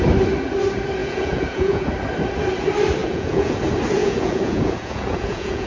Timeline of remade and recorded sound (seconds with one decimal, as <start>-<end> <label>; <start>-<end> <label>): 0.0-1.0 recorded; 1.0-1.9 remade; 1.9-3.0 recorded; 3.0-3.6 remade; 3.6-4.0 recorded; 4.0-5.7 remade